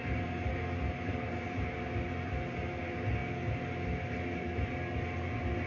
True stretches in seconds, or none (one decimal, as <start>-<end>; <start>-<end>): 0.0-5.7